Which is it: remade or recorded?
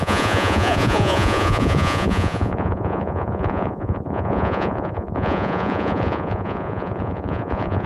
remade